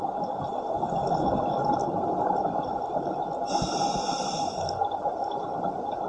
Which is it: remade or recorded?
recorded